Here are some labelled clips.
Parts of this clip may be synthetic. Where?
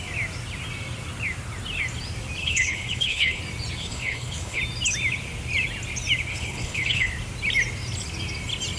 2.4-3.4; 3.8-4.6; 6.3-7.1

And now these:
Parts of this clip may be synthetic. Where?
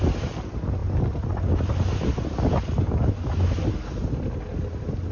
none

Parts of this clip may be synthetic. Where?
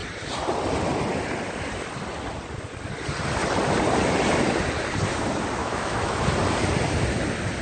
5.6-6.2